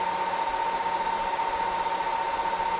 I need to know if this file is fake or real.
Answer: real